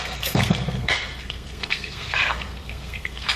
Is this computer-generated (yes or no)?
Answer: yes